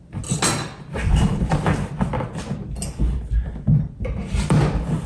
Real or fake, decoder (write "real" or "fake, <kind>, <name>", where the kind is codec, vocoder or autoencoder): real